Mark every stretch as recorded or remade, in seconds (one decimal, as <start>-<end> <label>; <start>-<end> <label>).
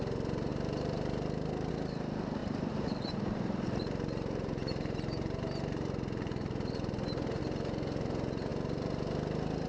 0.0-0.5 recorded; 0.5-1.7 remade; 1.7-2.4 recorded; 2.4-7.4 remade; 7.4-9.7 recorded